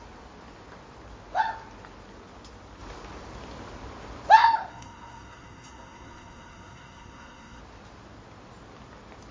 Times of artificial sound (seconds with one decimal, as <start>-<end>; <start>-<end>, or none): 4.7-7.6